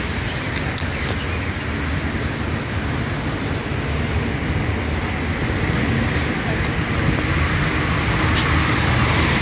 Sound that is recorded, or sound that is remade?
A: recorded